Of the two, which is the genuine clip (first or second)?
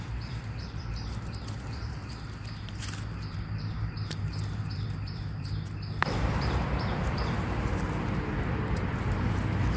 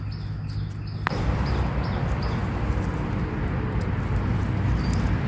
second